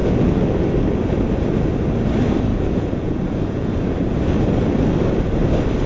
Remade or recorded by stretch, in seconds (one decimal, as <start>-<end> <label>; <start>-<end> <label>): 0.0-2.5 recorded; 2.5-3.7 remade; 3.7-5.9 recorded